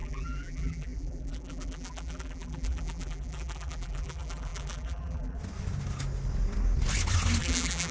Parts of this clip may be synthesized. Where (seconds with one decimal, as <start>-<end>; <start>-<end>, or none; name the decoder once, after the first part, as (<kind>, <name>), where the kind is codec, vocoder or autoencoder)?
0.0-5.4 (vocoder, BigVGAN v2); 7.4-7.9